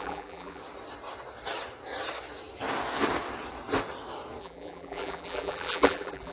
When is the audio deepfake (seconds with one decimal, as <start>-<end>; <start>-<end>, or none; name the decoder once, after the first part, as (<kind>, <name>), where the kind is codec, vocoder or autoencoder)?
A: 0.0-0.6 (vocoder, BigVGAN v2); 4.4-6.3